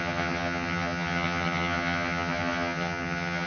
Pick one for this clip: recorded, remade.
remade